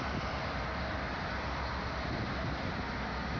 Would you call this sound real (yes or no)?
yes